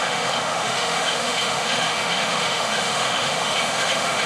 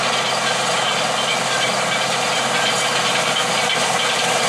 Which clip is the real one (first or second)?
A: second